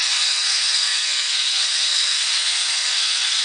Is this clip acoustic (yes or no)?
no